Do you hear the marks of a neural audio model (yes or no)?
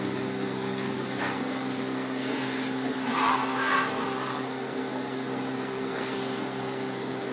yes